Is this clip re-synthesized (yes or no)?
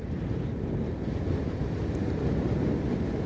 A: no